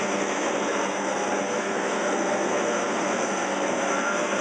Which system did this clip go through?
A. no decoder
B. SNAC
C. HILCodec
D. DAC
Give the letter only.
B